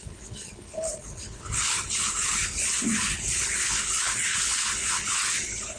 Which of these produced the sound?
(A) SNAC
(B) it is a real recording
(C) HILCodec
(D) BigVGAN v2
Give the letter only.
C